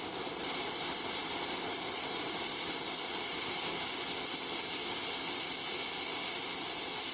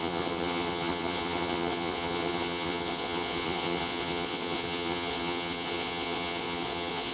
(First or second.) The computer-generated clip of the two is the second